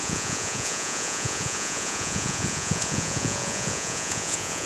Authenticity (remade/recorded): remade